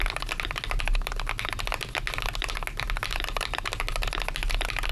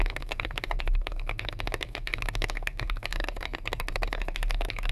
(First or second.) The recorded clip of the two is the first